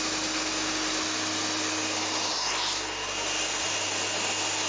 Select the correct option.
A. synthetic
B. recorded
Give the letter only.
B